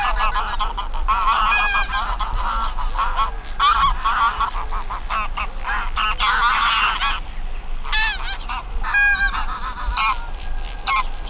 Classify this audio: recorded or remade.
recorded